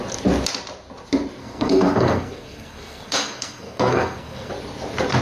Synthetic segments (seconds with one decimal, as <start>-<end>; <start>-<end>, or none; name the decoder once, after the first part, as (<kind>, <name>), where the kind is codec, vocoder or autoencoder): 1.4-4.5 (codec, SNAC)